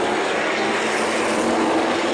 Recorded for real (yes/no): yes